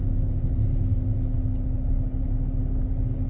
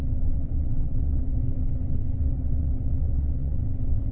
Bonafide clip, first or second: first